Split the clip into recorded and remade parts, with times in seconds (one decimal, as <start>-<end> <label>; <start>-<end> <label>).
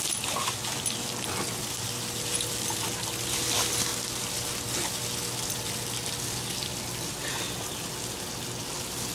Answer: 0.0-9.1 recorded